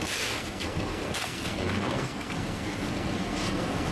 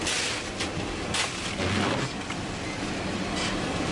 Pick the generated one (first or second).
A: first